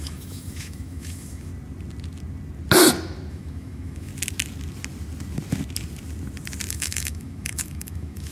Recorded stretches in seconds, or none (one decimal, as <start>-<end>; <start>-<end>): 1.5-3.3; 4.1-6.7